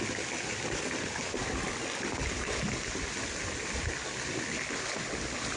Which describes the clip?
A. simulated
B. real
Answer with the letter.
B